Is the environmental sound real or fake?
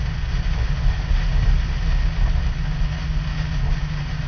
real